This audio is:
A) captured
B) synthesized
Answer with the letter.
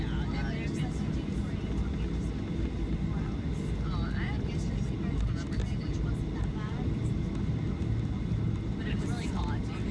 A